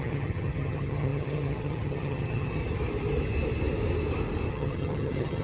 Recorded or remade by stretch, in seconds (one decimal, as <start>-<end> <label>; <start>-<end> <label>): 0.0-2.6 remade; 2.6-4.5 recorded; 4.5-5.4 remade